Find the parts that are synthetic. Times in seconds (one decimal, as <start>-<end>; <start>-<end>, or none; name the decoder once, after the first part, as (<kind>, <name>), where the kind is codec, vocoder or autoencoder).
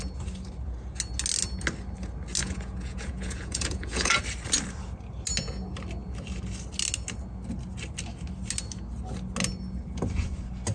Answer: 2.4-4.2 (vocoder, Vocos)